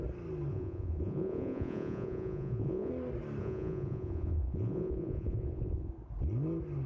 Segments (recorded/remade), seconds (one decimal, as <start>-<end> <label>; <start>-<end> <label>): 0.0-0.5 recorded; 0.5-2.9 remade; 2.9-3.4 recorded; 3.4-5.9 remade; 5.9-6.9 recorded